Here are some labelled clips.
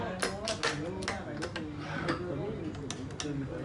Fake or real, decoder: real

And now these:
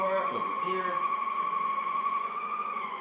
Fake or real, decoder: fake, vocoder, Vocos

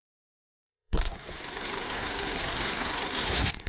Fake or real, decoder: fake, codec, SNAC